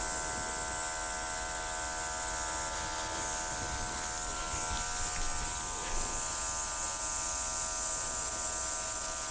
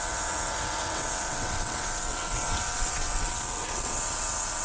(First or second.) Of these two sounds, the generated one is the second